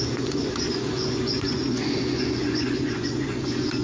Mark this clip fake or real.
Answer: fake